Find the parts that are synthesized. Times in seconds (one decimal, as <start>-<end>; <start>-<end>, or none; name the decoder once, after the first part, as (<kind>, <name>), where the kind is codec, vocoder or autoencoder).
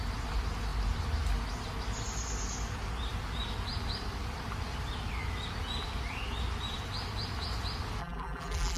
8.0-8.8 (vocoder, BigVGAN v2)